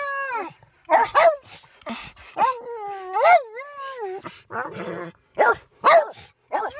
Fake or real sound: real